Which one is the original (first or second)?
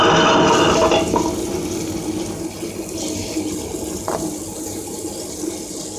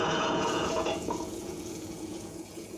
first